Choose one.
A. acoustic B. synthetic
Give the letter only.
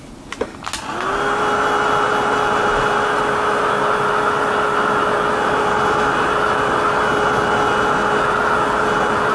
A